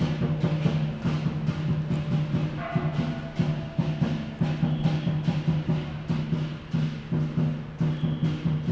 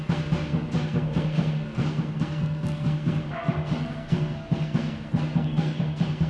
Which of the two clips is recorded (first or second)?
first